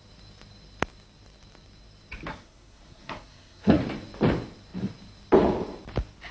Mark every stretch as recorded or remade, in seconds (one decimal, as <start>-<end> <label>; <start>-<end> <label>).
0.0-2.3 recorded; 2.3-3.8 remade; 3.8-6.3 recorded